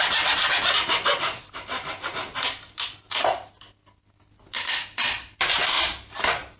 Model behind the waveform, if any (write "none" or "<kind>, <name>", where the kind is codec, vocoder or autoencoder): none